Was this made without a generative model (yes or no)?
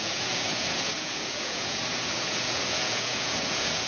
no